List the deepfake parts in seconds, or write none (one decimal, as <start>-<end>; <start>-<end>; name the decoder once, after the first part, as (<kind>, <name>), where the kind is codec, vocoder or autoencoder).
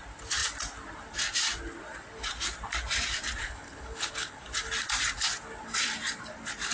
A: 3.4-4.4 (codec, HILCodec)